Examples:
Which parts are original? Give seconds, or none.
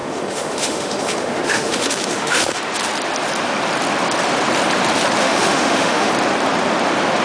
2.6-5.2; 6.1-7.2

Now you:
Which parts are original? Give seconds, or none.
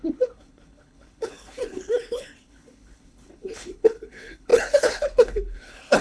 none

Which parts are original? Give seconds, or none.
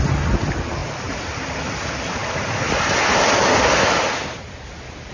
0.0-5.1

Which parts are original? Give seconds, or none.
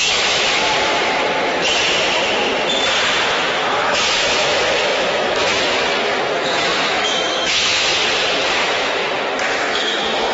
0.6-3.2; 7.9-8.5; 9.0-9.6